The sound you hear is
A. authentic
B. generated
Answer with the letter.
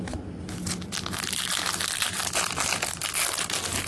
A